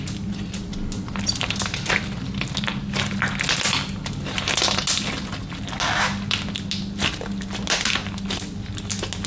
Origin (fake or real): real